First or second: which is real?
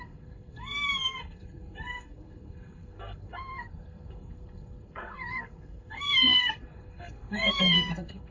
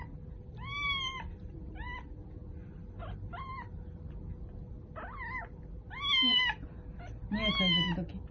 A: second